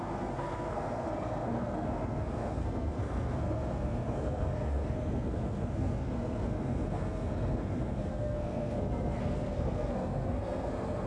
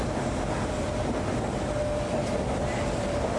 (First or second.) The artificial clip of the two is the first